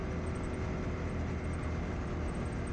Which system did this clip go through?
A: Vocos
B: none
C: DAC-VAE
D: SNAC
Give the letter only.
B